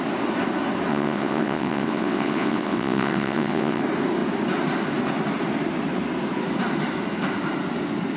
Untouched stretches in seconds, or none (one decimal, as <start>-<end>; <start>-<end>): 0.0-0.9; 3.8-8.2